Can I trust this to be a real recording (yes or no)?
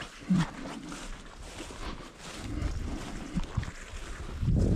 yes